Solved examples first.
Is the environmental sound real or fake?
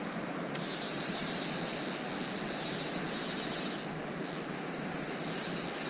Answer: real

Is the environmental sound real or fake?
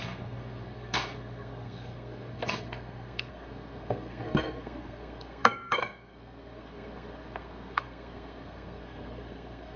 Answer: fake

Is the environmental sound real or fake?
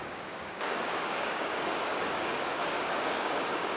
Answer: fake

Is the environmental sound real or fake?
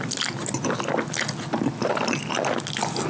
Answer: real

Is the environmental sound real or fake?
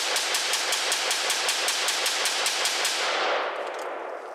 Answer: real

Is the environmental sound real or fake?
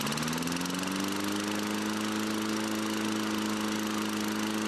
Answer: real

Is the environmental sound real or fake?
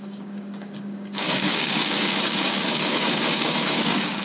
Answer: fake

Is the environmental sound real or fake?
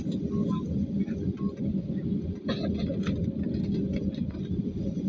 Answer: real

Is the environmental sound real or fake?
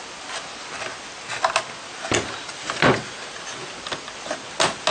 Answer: real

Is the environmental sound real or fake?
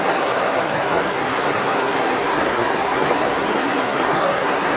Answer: fake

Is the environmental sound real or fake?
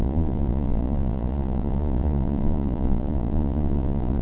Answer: fake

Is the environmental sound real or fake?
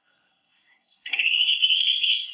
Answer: fake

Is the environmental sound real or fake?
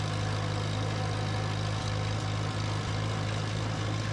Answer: real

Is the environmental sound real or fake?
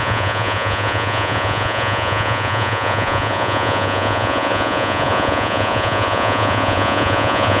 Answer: fake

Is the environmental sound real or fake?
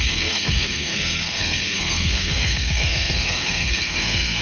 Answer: fake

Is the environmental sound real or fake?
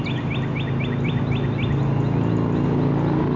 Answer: real